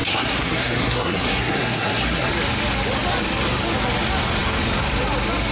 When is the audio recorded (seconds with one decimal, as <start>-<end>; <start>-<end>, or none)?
2.3-5.5